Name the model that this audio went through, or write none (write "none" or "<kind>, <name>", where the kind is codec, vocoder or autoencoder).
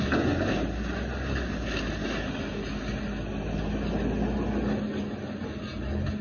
none